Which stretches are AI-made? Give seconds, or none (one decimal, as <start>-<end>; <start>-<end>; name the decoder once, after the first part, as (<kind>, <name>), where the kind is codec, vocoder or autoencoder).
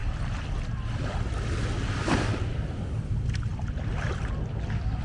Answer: none